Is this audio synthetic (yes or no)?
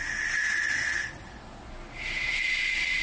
no